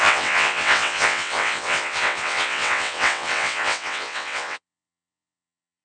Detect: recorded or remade remade